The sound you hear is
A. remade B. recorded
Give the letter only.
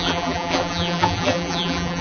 A